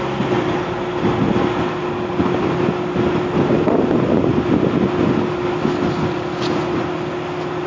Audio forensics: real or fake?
real